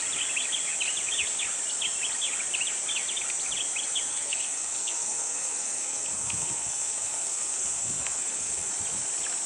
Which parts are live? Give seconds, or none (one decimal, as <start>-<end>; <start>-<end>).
0.0-4.1; 8.7-9.5